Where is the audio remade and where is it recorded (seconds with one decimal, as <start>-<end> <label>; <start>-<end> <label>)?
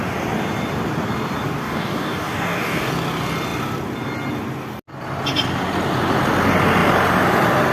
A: 0.0-1.6 recorded; 1.6-2.9 remade; 2.9-7.7 recorded